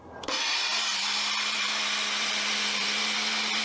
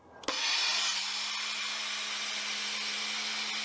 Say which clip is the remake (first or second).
first